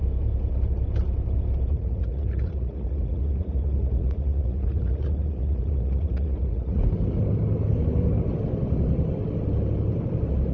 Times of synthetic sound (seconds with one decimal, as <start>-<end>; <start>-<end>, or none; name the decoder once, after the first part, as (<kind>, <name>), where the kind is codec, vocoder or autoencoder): 1.7-6.8 (vocoder, Vocos)